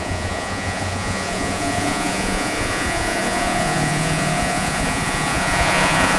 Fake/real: fake